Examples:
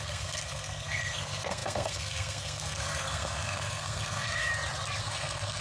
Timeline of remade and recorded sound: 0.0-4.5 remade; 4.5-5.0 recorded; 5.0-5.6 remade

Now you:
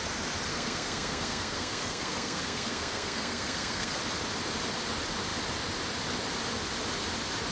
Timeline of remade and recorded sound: 0.0-0.5 recorded; 0.5-4.0 remade; 4.0-7.5 recorded

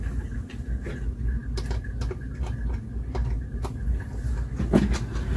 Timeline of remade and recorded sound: 0.0-5.4 recorded

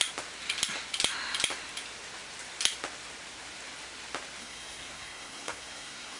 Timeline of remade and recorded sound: 0.0-4.4 recorded; 4.4-6.2 remade